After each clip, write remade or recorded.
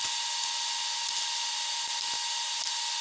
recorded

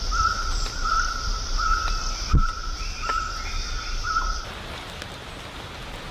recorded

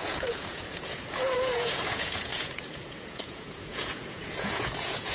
remade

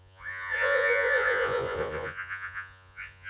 remade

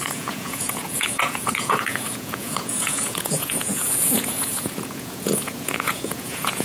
remade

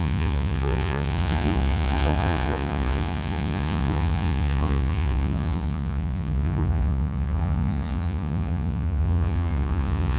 remade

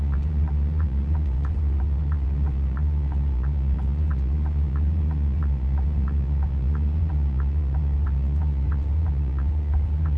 remade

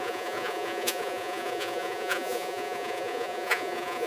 remade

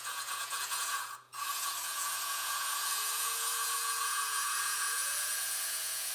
remade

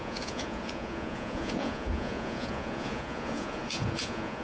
remade